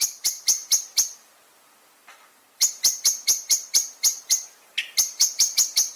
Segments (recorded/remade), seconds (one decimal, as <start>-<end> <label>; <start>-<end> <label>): 0.0-6.0 recorded